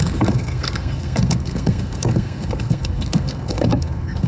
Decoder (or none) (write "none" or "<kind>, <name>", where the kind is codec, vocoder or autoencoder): codec, SNAC